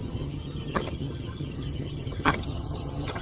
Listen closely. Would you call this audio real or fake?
fake